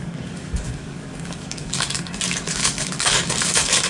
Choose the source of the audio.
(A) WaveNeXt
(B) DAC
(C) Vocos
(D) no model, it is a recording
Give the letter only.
B